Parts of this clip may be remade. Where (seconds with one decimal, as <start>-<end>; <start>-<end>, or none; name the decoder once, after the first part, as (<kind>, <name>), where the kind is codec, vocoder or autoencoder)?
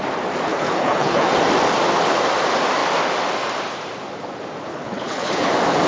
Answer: 0.5-1.3 (codec, HILCodec); 4.7-5.5